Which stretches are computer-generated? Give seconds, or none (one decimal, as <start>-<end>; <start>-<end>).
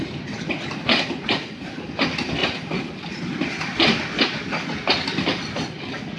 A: none